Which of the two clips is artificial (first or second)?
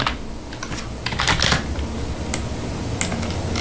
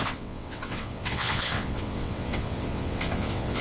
second